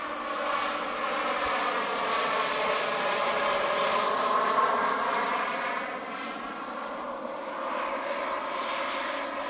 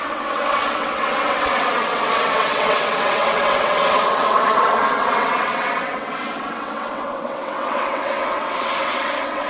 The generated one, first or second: second